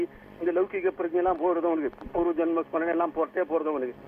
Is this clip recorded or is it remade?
recorded